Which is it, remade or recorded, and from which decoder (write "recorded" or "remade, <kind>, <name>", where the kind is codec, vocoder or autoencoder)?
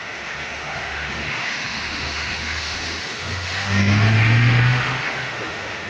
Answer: remade, autoencoder, DAC-VAE